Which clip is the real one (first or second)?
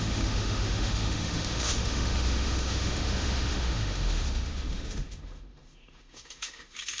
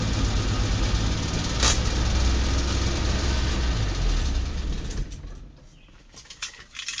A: second